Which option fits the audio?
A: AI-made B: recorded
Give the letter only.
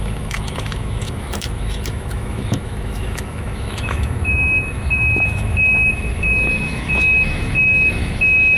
A